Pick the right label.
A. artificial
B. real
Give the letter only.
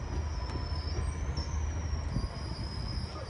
B